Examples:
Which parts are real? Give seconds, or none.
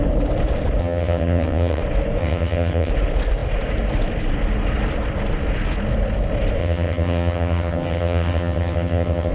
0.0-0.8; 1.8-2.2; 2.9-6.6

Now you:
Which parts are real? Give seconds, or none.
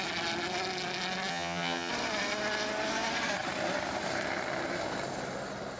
0.0-1.3; 1.9-5.8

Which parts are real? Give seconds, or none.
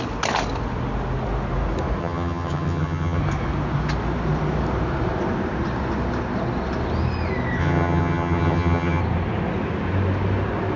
0.0-2.0; 3.2-7.6; 9.0-10.8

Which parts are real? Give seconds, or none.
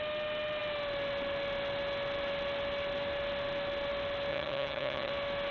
0.0-4.3; 5.1-5.5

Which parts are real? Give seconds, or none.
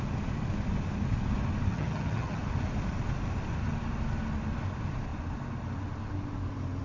0.0-1.7; 2.4-6.8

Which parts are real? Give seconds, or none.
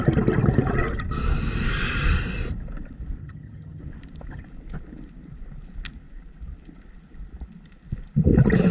0.0-3.2; 3.8-8.7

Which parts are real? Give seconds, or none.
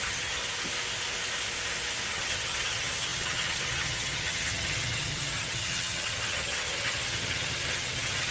0.4-2.1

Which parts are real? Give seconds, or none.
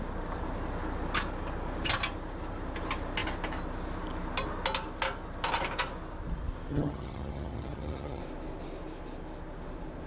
0.0-6.7; 8.2-10.1